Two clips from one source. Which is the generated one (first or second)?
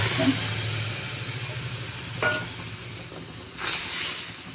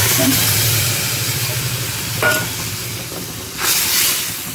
second